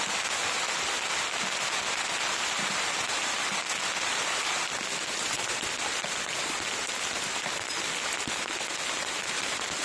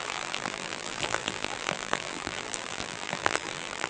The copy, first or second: second